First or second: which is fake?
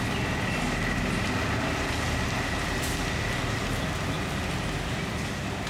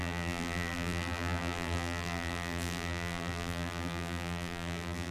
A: second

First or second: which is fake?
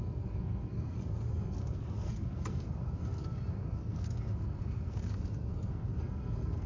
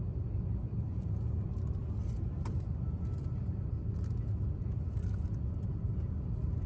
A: first